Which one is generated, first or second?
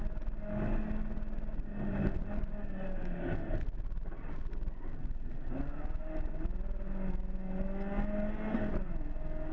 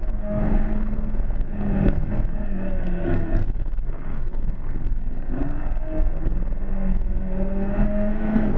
second